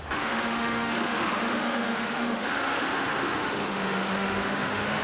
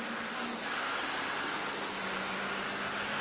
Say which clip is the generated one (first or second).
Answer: first